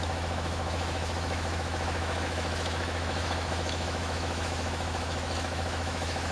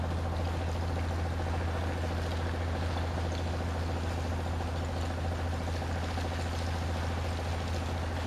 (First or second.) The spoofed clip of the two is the first